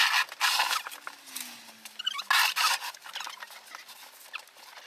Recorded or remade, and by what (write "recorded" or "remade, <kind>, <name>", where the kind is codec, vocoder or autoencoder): recorded